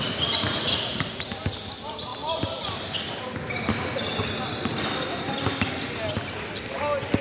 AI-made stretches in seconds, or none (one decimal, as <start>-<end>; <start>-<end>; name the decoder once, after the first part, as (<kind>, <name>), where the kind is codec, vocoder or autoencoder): none